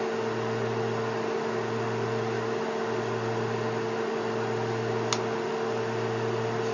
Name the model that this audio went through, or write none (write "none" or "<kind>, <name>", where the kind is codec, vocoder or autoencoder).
none